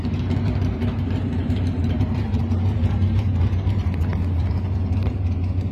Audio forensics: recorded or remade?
remade